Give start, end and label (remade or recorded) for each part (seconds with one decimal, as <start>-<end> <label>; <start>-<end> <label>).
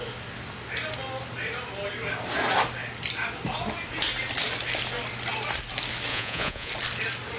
0.0-6.1 recorded; 6.1-6.7 remade; 6.7-7.4 recorded